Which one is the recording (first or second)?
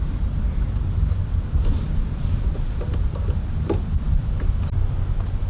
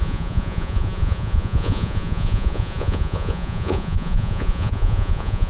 first